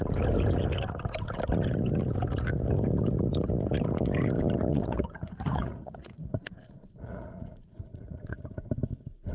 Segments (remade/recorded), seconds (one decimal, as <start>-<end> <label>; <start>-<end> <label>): 0.0-4.7 recorded; 4.7-8.7 remade; 8.7-9.3 recorded